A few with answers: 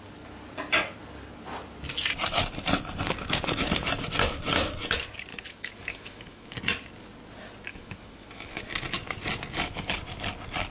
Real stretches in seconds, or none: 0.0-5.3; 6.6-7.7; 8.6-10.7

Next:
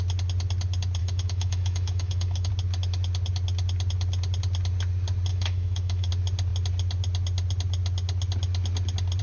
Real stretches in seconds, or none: 0.0-1.0; 2.5-5.3; 6.1-9.2

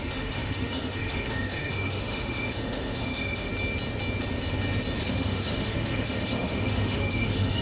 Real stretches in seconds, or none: 3.5-5.1

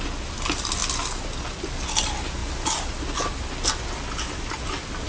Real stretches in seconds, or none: 0.0-5.1

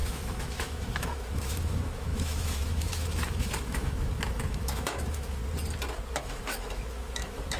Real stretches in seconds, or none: 5.4-6.1